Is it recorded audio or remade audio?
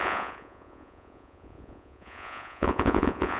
remade